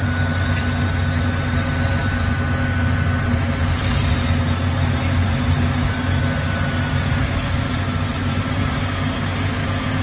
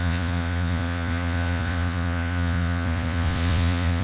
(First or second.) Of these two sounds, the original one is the first